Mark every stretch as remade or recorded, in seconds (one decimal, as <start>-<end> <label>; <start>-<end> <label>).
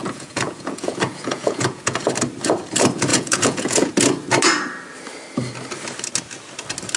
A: 0.0-2.0 remade; 2.0-3.1 recorded; 3.1-3.9 remade; 3.9-7.0 recorded